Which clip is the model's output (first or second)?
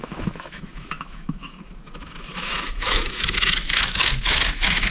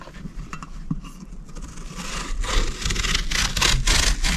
first